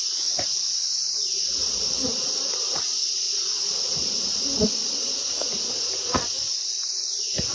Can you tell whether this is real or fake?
fake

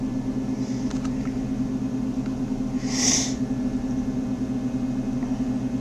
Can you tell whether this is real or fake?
real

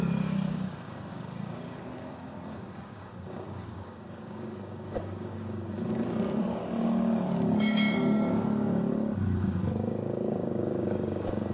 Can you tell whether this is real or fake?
fake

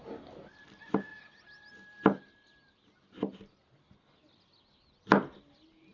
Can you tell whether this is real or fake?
real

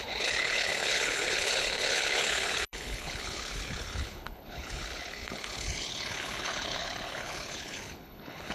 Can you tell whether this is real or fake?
fake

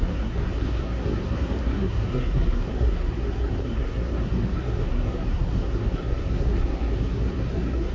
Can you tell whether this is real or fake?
fake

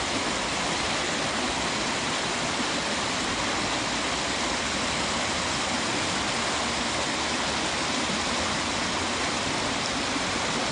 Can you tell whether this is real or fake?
real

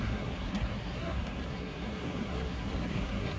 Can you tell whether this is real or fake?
fake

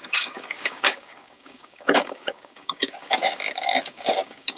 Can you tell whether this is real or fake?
fake